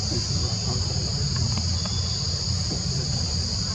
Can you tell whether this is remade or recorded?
recorded